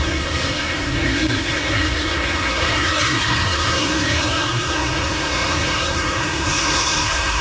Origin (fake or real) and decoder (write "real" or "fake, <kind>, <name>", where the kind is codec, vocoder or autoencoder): fake, codec, SNAC